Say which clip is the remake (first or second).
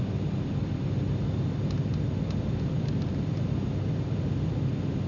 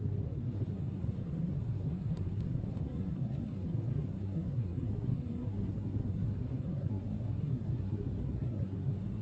second